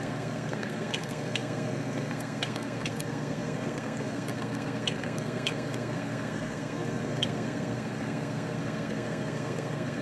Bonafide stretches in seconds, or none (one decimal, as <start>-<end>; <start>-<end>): none